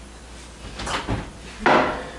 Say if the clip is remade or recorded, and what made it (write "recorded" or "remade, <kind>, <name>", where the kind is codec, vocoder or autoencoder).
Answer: recorded